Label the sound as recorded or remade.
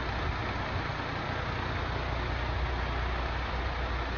recorded